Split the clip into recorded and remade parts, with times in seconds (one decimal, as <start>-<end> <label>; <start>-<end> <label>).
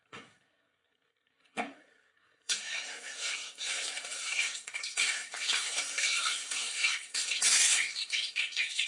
0.0-8.9 remade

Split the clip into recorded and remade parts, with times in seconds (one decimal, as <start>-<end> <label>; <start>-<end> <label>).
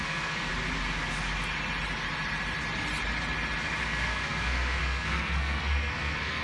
0.0-0.5 remade; 0.5-3.8 recorded; 3.8-6.4 remade